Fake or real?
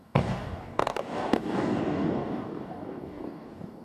fake